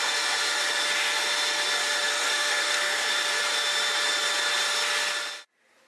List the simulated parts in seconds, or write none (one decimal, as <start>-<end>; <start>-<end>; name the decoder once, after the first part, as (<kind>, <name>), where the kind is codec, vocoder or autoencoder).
2.1-3.1 (codec, SNAC)